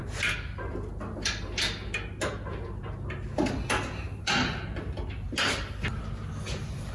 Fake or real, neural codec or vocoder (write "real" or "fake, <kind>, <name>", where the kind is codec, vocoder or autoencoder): real